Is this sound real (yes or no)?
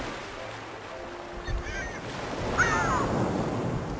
yes